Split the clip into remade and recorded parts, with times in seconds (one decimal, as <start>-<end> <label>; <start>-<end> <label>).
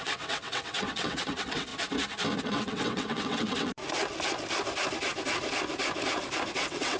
0.0-1.7 remade; 1.7-2.4 recorded; 2.4-3.8 remade; 3.8-6.5 recorded; 6.5-7.0 remade